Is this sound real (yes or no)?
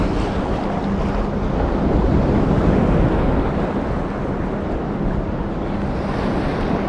yes